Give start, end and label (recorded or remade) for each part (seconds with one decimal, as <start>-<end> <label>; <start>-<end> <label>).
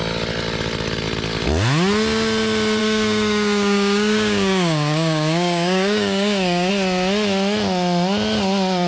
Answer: 0.0-2.8 recorded; 2.8-6.7 remade; 6.7-8.9 recorded